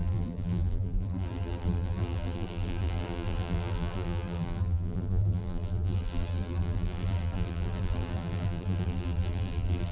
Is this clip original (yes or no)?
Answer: no